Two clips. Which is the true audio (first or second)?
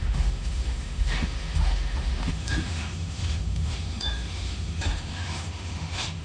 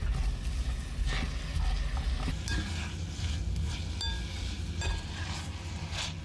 second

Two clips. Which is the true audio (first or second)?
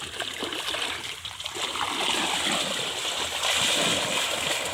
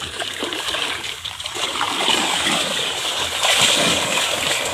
first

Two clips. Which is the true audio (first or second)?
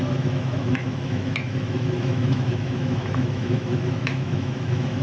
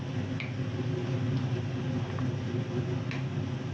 second